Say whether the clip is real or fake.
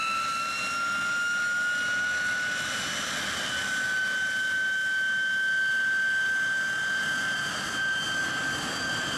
real